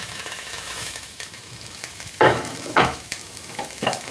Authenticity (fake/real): fake